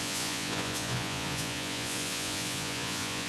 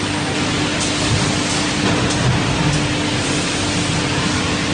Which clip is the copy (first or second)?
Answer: first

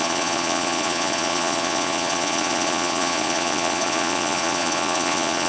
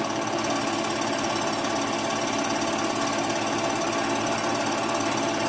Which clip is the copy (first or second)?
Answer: first